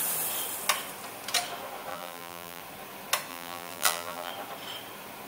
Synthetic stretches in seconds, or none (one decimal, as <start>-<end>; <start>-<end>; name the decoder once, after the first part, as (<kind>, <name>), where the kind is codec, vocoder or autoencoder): 1.9-2.6 (vocoder, BigVGAN v2); 3.3-4.3